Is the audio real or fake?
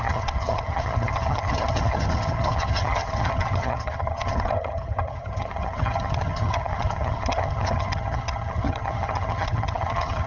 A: fake